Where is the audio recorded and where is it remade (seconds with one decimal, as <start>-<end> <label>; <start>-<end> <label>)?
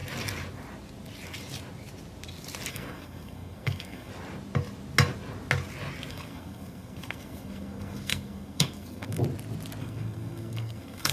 0.0-2.7 recorded; 2.7-4.1 remade; 4.1-6.1 recorded; 6.1-9.2 remade; 9.2-9.8 recorded; 9.8-11.1 remade